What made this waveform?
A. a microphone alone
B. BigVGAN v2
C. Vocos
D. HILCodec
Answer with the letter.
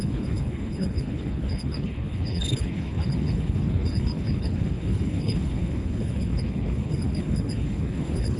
D